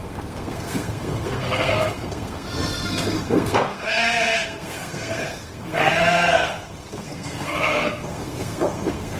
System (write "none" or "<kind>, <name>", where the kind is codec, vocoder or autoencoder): codec, SNAC